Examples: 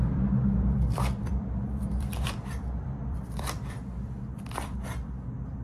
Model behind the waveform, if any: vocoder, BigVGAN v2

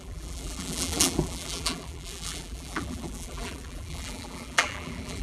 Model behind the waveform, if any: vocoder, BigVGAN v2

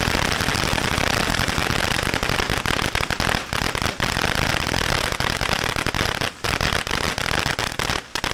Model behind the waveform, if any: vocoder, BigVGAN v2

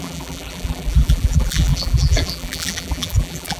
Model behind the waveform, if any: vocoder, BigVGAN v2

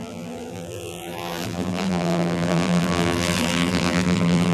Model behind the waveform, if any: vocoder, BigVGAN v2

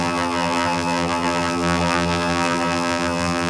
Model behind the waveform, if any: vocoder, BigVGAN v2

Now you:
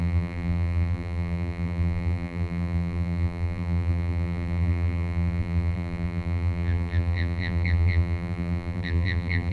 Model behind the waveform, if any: vocoder, BigVGAN v2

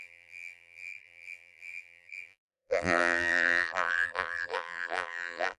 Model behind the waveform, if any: vocoder, BigVGAN v2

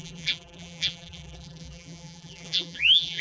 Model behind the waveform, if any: vocoder, BigVGAN v2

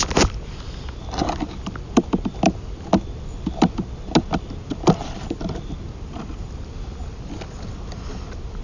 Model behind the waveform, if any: none